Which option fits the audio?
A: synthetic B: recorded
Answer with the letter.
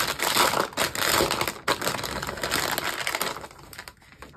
B